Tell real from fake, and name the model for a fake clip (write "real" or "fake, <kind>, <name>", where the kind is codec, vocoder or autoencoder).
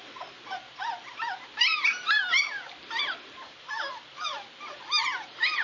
real